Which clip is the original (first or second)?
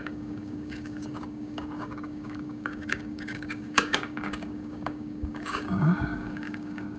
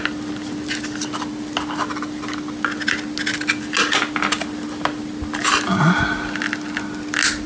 second